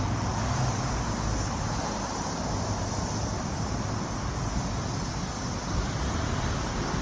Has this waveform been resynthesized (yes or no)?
no